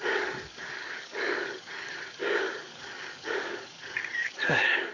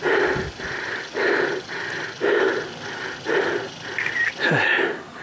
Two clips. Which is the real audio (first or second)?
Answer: second